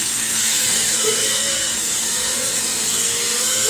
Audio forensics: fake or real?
fake